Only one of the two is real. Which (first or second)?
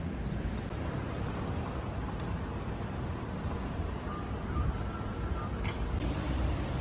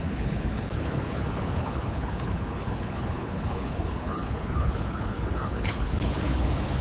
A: first